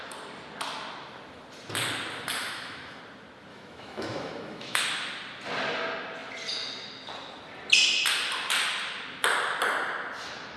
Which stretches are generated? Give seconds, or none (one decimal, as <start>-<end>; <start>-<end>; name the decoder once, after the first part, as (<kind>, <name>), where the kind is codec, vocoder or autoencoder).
2.4-3.0 (autoencoder, DAC-VAE); 3.5-4.8